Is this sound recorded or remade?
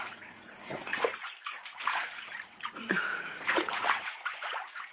remade